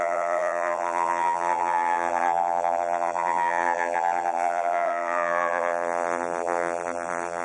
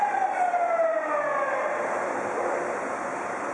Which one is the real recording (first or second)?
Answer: second